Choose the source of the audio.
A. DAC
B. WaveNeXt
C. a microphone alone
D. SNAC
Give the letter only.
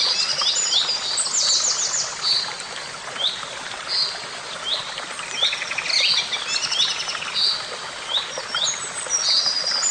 C